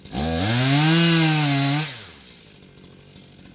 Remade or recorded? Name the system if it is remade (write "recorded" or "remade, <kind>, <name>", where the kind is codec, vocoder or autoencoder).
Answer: recorded